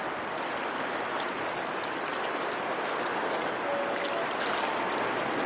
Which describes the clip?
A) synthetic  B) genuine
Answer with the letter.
B